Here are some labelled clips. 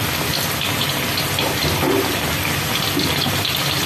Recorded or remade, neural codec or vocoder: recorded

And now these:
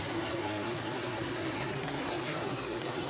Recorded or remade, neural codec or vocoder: remade, codec, SNAC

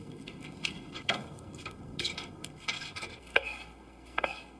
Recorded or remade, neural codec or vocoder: remade, codec, SNAC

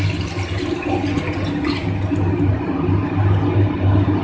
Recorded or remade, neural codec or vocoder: recorded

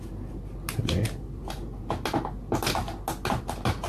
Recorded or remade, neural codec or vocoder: recorded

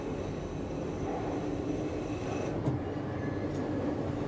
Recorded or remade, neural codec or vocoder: recorded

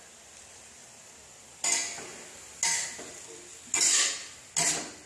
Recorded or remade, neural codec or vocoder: recorded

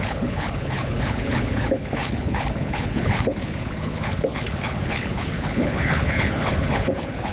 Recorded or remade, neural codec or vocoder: remade, codec, HILCodec